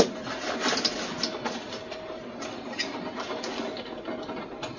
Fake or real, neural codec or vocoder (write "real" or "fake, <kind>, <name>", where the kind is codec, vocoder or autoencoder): real